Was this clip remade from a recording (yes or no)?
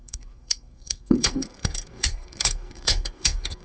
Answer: yes